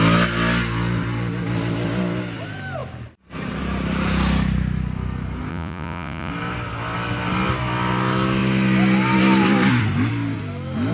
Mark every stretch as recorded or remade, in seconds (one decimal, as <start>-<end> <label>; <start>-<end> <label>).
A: 0.0-5.5 recorded; 5.5-6.3 remade; 6.3-10.9 recorded